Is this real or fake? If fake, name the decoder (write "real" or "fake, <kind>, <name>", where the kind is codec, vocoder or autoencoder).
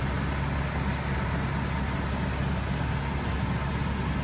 real